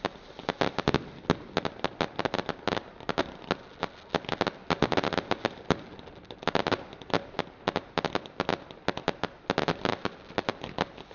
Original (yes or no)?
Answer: yes